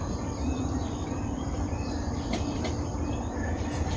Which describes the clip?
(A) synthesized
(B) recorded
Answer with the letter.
A